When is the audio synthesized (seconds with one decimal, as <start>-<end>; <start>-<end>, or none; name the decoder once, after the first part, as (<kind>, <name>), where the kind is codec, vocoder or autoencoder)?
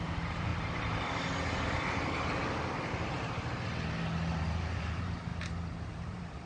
0.0-0.5 (vocoder, BigVGAN v2); 4.4-5.3; 5.8-6.5